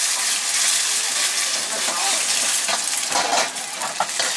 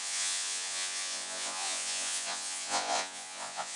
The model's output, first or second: second